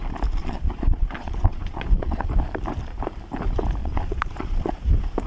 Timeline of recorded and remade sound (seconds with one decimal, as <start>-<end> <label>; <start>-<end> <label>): 0.0-0.4 recorded; 0.4-2.3 remade; 2.3-3.8 recorded; 3.8-4.8 remade; 4.8-5.3 recorded